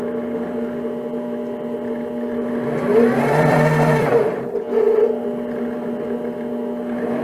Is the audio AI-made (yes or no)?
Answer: yes